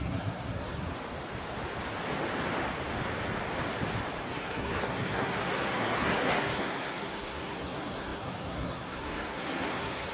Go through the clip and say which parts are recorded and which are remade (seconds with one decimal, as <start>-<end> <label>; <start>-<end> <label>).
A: 0.0-0.9 remade; 0.9-4.3 recorded; 4.3-10.1 remade